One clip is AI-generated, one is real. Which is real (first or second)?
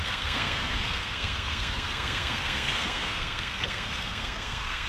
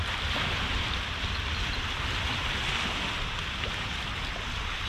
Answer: second